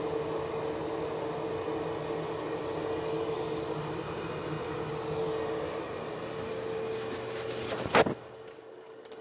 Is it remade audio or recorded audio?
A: recorded